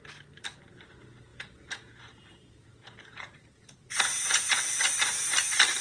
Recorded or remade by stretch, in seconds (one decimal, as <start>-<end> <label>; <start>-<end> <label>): 0.0-1.3 recorded; 1.3-4.8 remade; 4.8-5.8 recorded